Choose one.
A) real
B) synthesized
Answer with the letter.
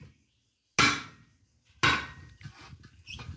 A